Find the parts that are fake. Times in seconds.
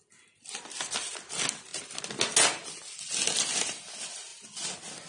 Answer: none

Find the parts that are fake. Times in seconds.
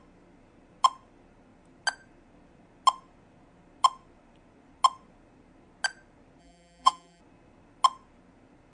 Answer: 6.4-7.2 (vocoder, BigVGAN v2)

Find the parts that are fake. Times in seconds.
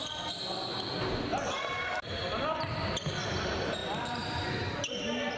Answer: 1.3-2.1 (vocoder, BigVGAN v2); 3.8-4.5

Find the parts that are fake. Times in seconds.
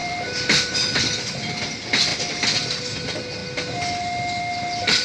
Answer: 0.0-1.3 (vocoder, BigVGAN v2); 2.1-2.8